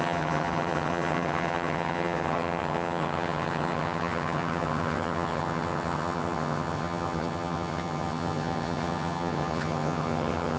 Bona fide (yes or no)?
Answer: no